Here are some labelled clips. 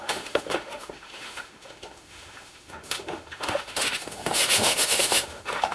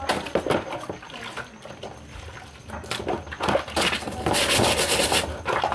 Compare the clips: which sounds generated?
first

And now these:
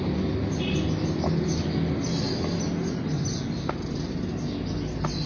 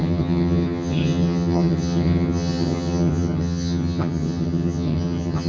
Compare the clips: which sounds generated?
second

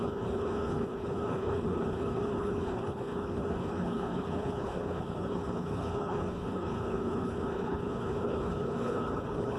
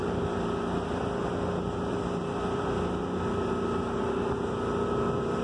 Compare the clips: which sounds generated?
first